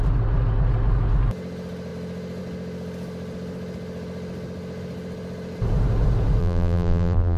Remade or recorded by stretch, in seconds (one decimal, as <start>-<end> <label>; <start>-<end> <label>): 0.0-6.4 recorded; 6.4-7.4 remade